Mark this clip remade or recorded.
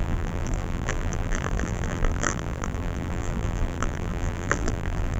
remade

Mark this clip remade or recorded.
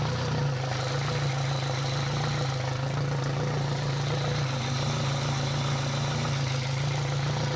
recorded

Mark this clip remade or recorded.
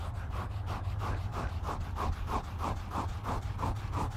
remade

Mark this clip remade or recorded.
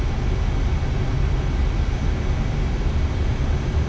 recorded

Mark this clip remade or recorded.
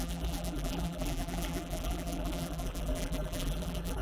remade